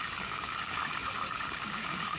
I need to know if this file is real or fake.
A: fake